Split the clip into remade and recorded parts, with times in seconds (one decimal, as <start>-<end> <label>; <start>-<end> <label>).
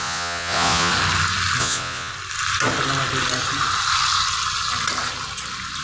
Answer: 0.0-0.9 remade; 0.9-1.6 recorded; 1.6-2.1 remade; 2.1-5.8 recorded